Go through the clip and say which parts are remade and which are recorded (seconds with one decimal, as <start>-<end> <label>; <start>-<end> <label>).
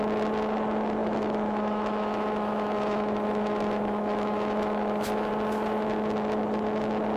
0.0-1.0 recorded; 1.0-5.3 remade; 5.3-7.2 recorded